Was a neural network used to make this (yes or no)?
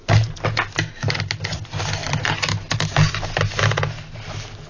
no